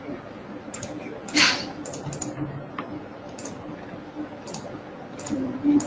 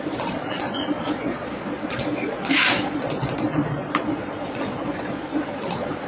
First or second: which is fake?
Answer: second